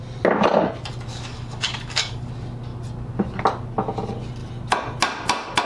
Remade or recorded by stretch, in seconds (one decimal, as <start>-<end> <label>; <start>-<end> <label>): 0.0-1.1 recorded; 1.1-2.3 remade; 2.3-5.7 recorded